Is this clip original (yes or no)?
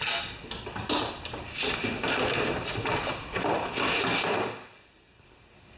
yes